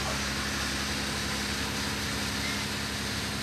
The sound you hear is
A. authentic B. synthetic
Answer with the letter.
A